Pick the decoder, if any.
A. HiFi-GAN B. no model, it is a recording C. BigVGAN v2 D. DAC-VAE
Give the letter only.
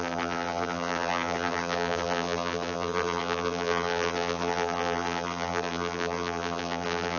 C